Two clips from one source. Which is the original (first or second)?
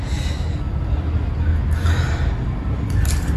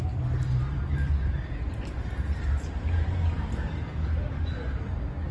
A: first